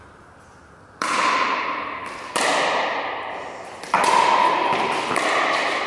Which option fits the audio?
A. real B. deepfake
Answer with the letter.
A